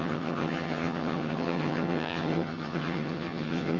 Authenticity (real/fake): fake